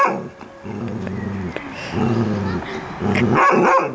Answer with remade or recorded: recorded